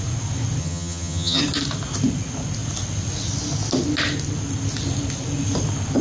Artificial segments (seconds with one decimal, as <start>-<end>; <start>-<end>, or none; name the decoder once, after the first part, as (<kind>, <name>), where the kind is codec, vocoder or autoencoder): 0.6-1.4 (vocoder, HiFi-GAN)